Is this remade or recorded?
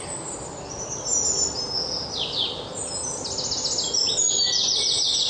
recorded